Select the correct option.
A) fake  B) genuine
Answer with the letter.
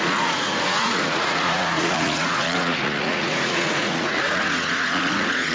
A